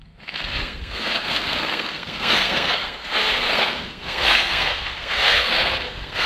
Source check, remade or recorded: remade